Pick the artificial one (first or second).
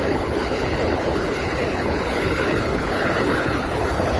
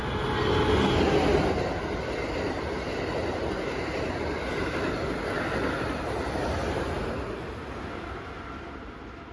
first